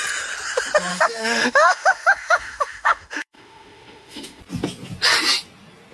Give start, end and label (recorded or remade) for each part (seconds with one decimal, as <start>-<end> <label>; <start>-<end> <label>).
0.0-0.9 recorded; 0.9-4.4 remade; 4.4-5.9 recorded

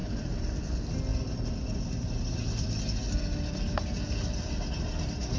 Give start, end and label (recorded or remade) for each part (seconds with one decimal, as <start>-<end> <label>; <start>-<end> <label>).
0.0-0.6 remade; 0.6-5.4 recorded

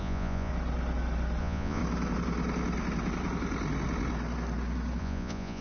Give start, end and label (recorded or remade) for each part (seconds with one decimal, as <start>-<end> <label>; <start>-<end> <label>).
0.0-0.5 remade; 0.5-1.4 recorded; 1.4-1.8 remade; 1.8-5.0 recorded; 5.0-5.6 remade

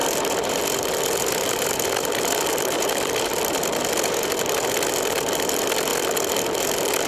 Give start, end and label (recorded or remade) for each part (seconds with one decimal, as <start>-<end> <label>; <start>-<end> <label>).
0.0-3.4 remade; 3.4-7.1 recorded

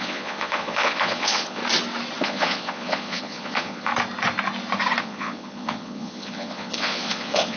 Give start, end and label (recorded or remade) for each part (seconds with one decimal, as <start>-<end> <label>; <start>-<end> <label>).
0.0-1.6 remade; 1.6-2.2 recorded; 2.2-3.9 remade; 3.9-5.0 recorded; 5.0-7.6 remade

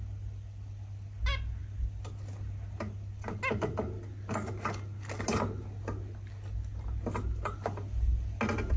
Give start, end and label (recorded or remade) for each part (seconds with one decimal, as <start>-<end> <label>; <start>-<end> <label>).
0.0-8.8 recorded

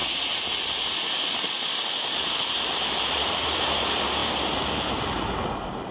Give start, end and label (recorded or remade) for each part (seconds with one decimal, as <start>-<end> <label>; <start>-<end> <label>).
0.0-5.9 recorded